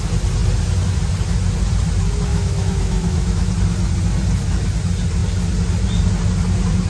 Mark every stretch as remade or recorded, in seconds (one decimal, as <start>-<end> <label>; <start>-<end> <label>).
0.0-2.3 recorded; 2.3-3.5 remade; 3.5-6.9 recorded